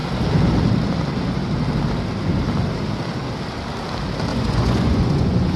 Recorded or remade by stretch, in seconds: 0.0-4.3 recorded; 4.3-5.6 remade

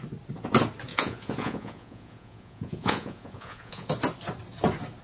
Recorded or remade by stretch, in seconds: 0.0-0.9 recorded; 0.9-3.9 remade; 3.9-5.0 recorded

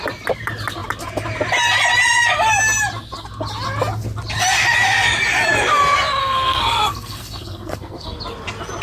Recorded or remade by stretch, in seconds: 0.0-6.2 recorded; 6.2-8.2 remade; 8.2-8.8 recorded

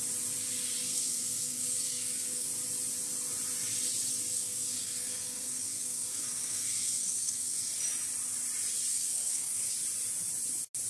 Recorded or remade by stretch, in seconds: 0.0-0.8 recorded; 0.8-2.5 remade; 2.5-4.3 recorded; 4.3-7.7 remade; 7.7-8.9 recorded; 8.9-9.7 remade; 9.7-10.9 recorded

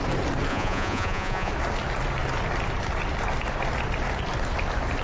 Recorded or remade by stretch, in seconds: 0.0-0.5 recorded; 0.5-1.5 remade; 1.5-5.0 recorded

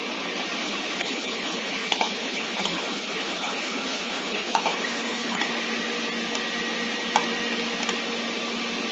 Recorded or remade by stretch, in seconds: 0.0-0.6 recorded; 0.6-5.5 remade; 5.5-8.9 recorded

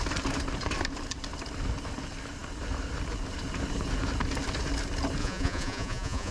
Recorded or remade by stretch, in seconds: 0.0-5.2 recorded; 5.2-6.3 remade

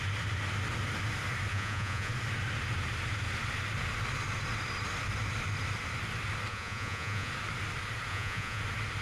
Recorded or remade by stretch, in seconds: 0.0-1.5 recorded; 1.5-2.1 remade; 2.1-6.5 recorded; 6.5-7.3 remade; 7.3-8.1 recorded; 8.1-8.6 remade; 8.6-9.0 recorded